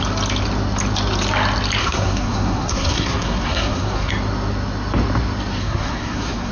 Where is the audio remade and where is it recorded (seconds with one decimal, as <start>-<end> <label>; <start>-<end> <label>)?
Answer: 0.0-1.8 recorded; 1.8-4.1 remade; 4.1-5.6 recorded; 5.6-6.5 remade